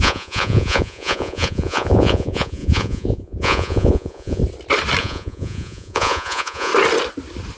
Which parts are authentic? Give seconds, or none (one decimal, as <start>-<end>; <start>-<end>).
4.4-5.0; 6.7-7.6